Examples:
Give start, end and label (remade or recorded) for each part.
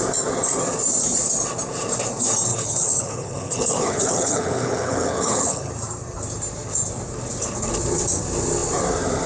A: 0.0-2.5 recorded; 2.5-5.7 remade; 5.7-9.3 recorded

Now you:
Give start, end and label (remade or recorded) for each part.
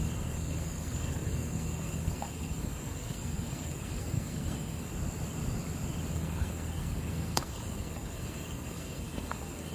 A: 0.0-4.9 remade; 4.9-6.1 recorded; 6.1-9.7 remade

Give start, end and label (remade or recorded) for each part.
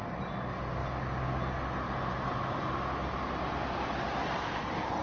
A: 0.0-5.0 recorded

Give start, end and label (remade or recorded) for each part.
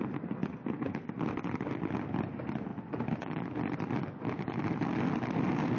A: 0.0-5.8 recorded